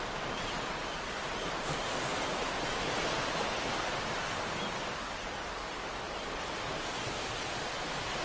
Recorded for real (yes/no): yes